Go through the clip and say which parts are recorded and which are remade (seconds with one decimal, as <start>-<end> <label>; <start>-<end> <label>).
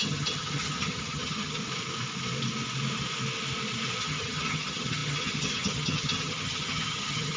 0.0-1.6 remade; 1.6-4.0 recorded; 4.0-7.4 remade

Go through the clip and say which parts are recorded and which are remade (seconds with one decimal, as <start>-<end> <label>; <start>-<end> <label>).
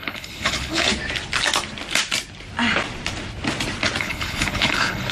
0.0-0.9 remade; 0.9-4.0 recorded; 4.0-5.1 remade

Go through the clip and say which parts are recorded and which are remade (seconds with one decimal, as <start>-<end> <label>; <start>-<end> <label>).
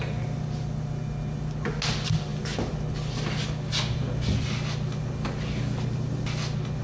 0.0-6.8 recorded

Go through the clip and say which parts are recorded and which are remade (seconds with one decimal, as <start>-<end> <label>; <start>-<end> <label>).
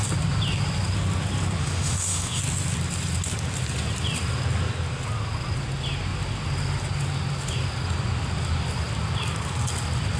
0.0-1.6 recorded; 1.6-2.4 remade; 2.4-10.2 recorded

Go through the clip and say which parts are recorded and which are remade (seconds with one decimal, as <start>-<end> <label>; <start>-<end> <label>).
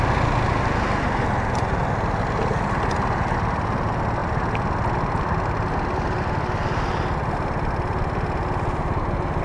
0.0-9.4 recorded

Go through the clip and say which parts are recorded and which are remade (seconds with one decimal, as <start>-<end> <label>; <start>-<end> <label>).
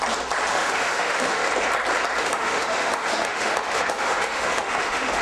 0.0-0.5 recorded; 0.5-1.5 remade; 1.5-2.2 recorded; 2.2-5.2 remade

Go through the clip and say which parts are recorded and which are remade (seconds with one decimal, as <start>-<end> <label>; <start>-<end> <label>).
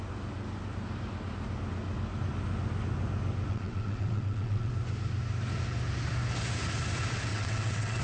0.0-3.5 recorded; 3.5-4.7 remade; 4.7-7.3 recorded; 7.3-8.0 remade